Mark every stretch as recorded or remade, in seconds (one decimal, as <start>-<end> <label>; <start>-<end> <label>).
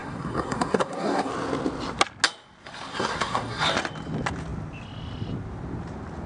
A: 0.0-1.3 remade; 1.3-2.9 recorded; 2.9-3.6 remade; 3.6-6.3 recorded